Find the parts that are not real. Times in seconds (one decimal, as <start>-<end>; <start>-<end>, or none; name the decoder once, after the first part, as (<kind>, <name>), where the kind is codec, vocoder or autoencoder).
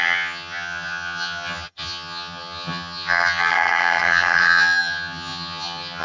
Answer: 0.0-6.0 (vocoder, HiFi-GAN)